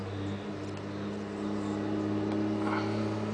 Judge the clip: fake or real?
real